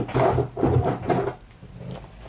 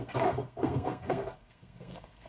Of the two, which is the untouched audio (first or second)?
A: first